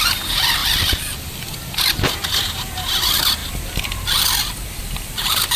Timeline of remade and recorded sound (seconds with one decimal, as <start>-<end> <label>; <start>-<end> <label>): 0.0-0.6 recorded; 0.6-1.1 remade; 1.1-3.4 recorded; 3.4-5.6 remade